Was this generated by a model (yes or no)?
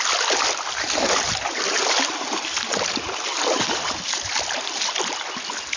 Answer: no